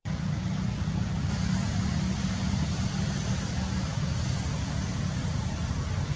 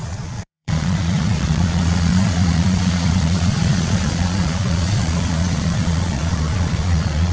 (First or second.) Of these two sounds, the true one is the first